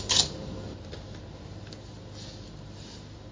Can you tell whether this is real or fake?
real